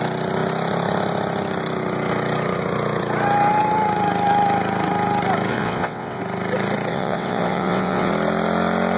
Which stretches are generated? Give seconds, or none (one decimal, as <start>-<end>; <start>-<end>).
5.5-6.2; 6.9-8.1